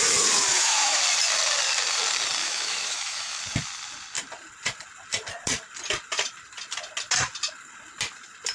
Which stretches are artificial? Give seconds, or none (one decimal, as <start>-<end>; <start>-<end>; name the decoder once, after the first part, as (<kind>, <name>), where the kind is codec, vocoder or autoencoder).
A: 0.5-1.0 (autoencoder, DAC-VAE); 2.4-3.4